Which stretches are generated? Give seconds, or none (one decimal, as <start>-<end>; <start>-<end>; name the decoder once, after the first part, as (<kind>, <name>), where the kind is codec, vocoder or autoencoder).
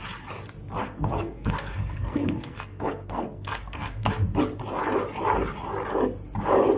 0.8-4.1 (codec, SNAC)